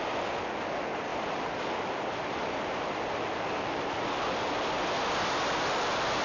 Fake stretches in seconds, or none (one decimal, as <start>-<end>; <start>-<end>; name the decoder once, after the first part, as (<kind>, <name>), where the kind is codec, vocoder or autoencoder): none